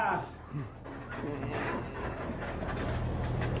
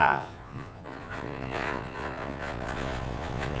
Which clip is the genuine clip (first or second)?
first